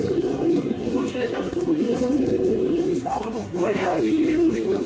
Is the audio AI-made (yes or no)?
yes